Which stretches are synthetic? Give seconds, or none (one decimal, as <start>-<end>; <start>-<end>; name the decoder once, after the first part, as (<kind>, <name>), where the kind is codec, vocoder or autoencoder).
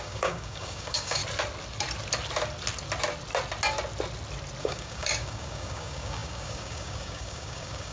0.0-1.2 (codec, DAC); 4.6-7.9